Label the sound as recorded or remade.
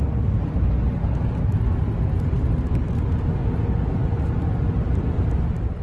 recorded